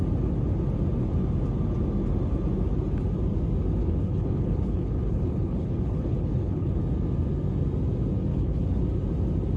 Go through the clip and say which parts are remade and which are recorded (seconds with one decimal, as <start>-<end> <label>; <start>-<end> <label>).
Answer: 0.0-3.8 recorded; 3.8-6.8 remade; 6.8-8.3 recorded; 8.3-8.8 remade; 8.8-9.6 recorded